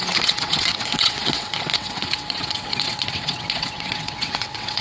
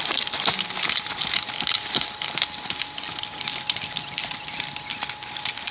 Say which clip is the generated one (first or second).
first